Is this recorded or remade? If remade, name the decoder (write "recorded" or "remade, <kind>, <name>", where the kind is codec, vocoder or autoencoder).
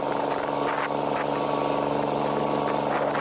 recorded